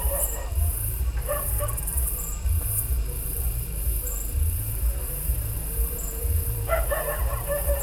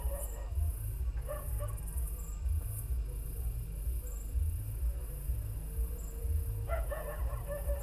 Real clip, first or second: second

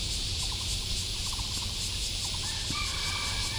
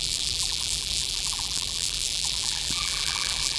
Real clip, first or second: first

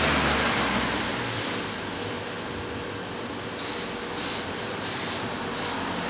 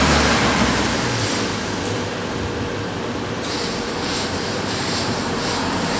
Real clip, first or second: first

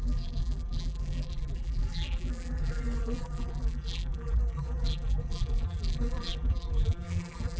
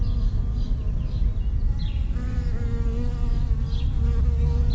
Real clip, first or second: second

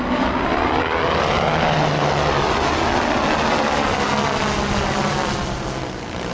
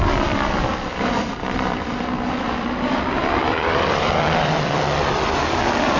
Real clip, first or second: first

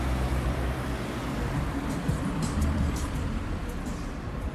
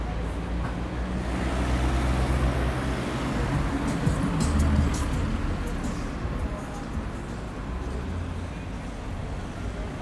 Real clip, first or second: second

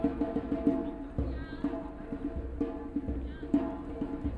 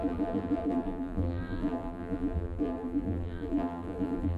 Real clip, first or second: first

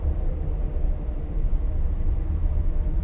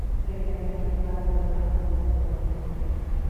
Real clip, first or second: second